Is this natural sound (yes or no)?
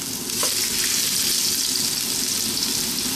yes